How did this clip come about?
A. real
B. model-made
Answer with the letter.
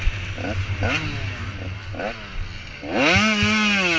A